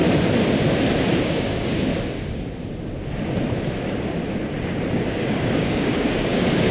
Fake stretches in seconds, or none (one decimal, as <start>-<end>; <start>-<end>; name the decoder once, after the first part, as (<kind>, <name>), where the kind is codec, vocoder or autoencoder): 1.2-1.9 (codec, DAC); 4.9-6.7